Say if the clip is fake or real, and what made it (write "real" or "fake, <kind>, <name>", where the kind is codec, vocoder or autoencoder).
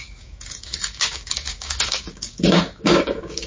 fake, codec, DAC